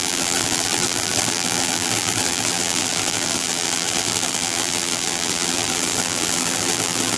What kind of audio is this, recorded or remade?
remade